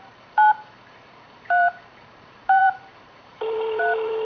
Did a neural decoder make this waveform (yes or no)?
yes